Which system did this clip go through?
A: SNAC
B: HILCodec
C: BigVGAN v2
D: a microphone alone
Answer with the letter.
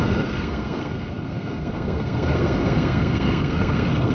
A